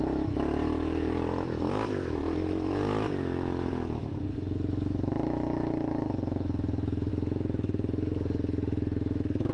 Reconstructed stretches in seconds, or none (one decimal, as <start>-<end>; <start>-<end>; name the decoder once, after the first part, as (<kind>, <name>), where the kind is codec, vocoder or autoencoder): 0.0-9.5 (autoencoder, DAC-VAE)